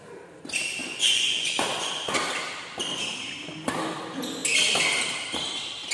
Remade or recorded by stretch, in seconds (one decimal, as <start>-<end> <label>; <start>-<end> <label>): 0.0-0.8 recorded; 0.8-2.1 remade; 2.1-5.9 recorded